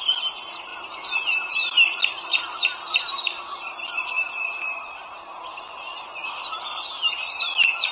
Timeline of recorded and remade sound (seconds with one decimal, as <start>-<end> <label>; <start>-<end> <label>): 0.0-7.9 recorded